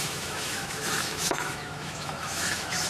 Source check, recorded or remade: remade